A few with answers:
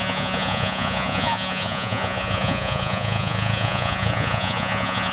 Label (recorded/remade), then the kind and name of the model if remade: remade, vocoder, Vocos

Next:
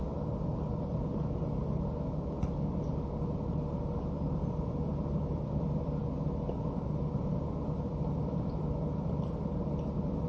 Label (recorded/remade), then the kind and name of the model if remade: recorded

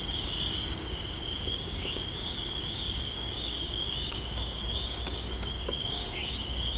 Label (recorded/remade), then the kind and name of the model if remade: remade, codec, DAC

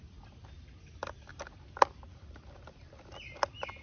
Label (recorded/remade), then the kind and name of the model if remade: recorded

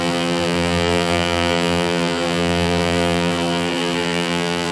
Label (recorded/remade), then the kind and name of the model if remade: remade, vocoder, BigVGAN v2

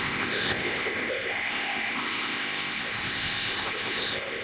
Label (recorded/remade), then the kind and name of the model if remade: remade, codec, ZipCodec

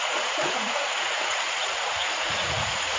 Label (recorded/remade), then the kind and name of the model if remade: remade, vocoder, Vocos